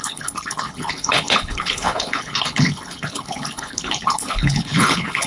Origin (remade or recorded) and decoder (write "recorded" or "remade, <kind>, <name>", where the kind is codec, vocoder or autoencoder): remade, codec, HILCodec